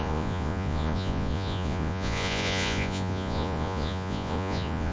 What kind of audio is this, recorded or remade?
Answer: remade